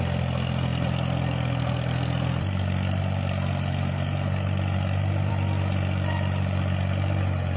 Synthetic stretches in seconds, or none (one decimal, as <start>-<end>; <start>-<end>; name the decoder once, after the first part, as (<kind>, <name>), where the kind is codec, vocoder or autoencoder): none